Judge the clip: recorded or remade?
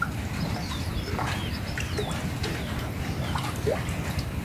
recorded